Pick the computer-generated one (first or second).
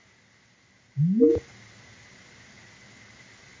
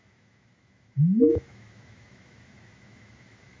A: second